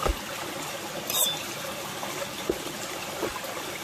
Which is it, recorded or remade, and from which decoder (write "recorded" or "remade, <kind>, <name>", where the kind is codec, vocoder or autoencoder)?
recorded